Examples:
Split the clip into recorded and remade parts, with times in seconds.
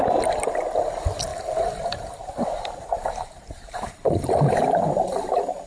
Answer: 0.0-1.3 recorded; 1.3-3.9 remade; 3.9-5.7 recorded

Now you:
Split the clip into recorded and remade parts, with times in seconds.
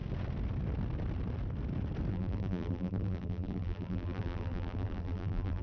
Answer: 0.0-2.1 recorded; 2.1-5.6 remade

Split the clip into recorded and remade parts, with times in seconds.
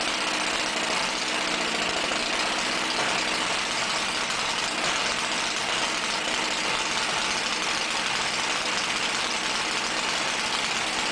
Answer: 0.0-11.1 recorded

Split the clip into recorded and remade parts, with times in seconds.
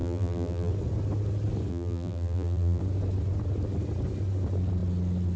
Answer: 0.0-0.7 remade; 0.7-1.7 recorded; 1.7-2.8 remade; 2.8-5.4 recorded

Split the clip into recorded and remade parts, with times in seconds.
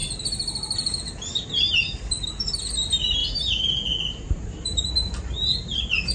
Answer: 0.0-3.2 recorded; 3.2-4.9 remade; 4.9-6.1 recorded